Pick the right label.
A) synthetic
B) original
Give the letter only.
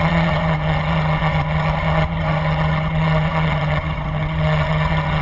A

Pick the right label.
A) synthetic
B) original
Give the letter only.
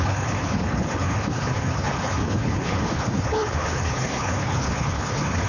A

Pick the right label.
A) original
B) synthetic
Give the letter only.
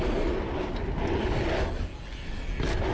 A